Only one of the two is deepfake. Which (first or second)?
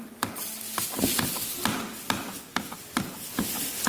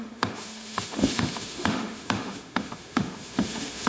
second